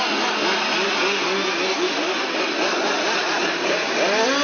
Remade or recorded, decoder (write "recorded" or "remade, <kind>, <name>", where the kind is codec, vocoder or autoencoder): recorded